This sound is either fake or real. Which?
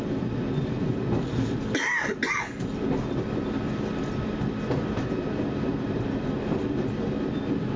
real